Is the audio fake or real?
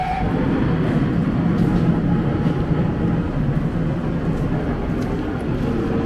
real